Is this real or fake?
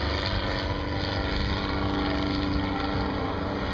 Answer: real